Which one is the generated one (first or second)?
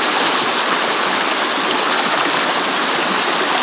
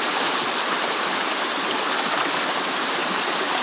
second